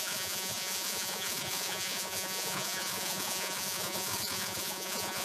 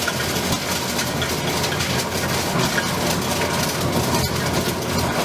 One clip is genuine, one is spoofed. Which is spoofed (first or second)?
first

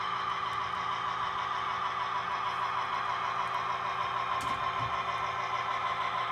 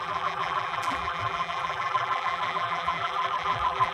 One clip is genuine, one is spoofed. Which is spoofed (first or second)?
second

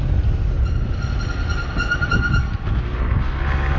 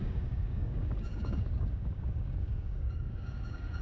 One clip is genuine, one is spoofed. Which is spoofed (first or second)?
second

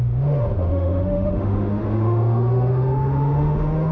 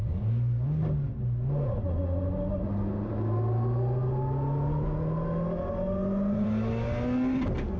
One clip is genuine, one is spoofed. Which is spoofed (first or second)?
first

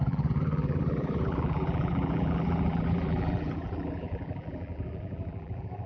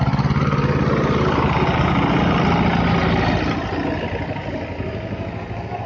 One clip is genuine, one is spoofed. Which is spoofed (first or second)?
first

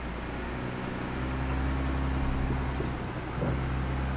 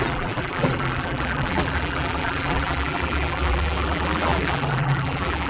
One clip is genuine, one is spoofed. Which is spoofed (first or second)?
second